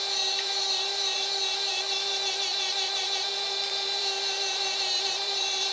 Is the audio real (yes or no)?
no